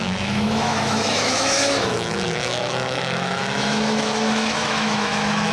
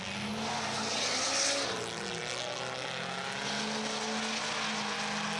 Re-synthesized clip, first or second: first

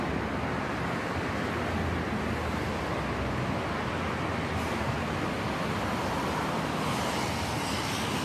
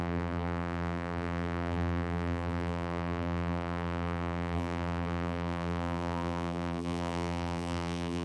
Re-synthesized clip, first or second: second